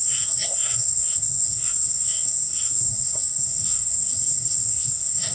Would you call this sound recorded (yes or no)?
no